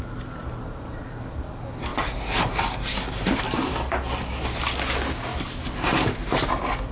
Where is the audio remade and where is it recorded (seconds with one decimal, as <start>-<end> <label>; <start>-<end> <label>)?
0.0-0.4 recorded; 0.4-1.0 remade; 1.0-1.9 recorded; 1.9-3.4 remade; 3.4-5.3 recorded; 5.3-6.5 remade; 6.5-6.9 recorded